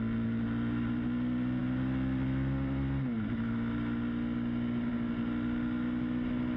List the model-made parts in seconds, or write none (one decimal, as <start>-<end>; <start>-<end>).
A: none